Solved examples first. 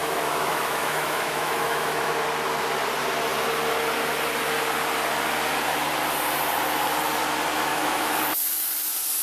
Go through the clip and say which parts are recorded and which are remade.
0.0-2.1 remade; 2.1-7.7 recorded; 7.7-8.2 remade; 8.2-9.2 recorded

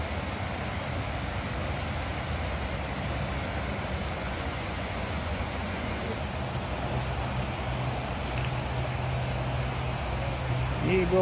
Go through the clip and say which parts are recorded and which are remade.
0.0-4.2 recorded; 4.2-6.0 remade; 6.0-11.2 recorded